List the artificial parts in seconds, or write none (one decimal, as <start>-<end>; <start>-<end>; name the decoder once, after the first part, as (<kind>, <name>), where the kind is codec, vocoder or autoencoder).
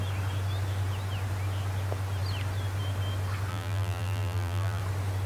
3.5-4.8 (vocoder, BigVGAN v2)